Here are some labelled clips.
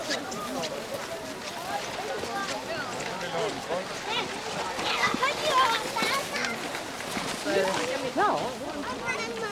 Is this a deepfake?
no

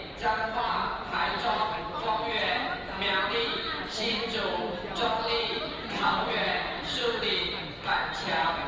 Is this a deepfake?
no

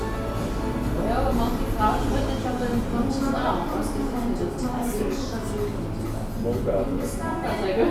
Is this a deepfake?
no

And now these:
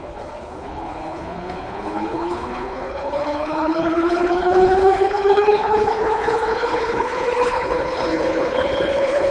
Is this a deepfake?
yes